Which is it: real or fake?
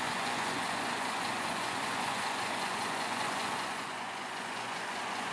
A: fake